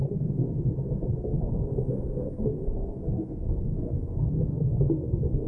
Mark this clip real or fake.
fake